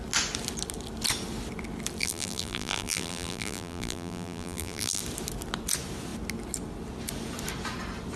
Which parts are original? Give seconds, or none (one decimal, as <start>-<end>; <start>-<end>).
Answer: 0.0-2.0; 5.0-8.2

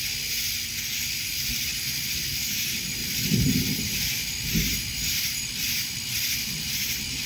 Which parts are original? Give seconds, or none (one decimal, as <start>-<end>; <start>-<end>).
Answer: 0.0-7.3

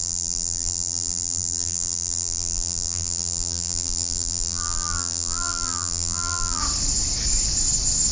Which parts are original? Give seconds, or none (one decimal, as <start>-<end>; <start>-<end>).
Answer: 6.6-8.1

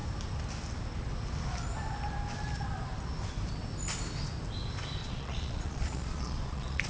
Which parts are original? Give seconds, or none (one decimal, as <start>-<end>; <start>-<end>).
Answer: 0.0-5.0

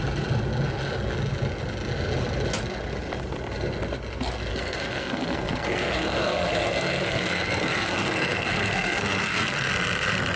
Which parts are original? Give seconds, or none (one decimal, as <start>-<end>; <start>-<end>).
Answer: 0.0-4.5; 9.7-10.4

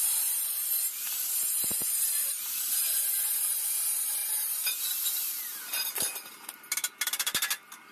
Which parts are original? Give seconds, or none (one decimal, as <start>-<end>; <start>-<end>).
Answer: 0.0-7.9

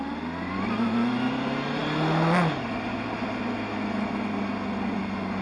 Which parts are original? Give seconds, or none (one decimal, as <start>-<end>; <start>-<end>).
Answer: 0.0-5.4

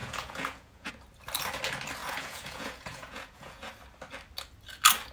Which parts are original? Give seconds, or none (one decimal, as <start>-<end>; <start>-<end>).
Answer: 0.9-2.0; 3.7-5.1